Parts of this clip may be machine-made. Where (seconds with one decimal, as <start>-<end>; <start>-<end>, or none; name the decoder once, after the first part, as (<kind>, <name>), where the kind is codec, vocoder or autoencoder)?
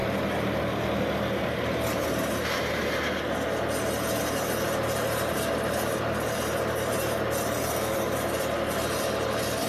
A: none